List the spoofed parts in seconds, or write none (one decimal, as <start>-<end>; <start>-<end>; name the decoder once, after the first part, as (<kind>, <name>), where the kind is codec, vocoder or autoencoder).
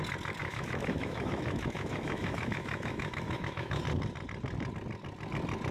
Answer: 0.4-3.8 (autoencoder, DAC-VAE)